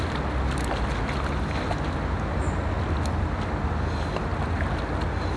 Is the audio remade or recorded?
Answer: recorded